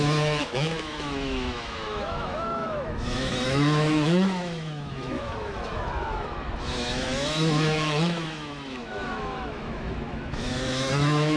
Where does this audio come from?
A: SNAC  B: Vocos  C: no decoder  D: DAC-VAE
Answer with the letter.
D